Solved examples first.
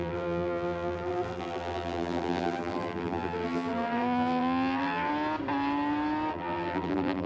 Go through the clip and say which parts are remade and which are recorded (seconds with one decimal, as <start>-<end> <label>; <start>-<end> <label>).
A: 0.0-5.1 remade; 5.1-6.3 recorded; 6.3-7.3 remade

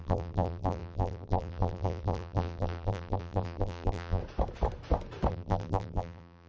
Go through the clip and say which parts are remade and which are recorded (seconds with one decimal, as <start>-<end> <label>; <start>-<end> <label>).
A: 0.0-4.2 remade; 4.2-5.3 recorded; 5.3-6.5 remade

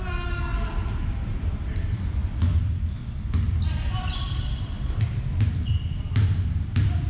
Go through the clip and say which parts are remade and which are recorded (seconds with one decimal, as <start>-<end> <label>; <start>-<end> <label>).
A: 0.0-7.1 recorded